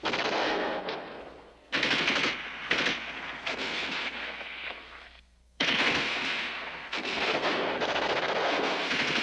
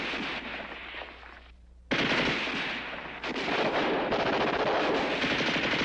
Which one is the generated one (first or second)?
first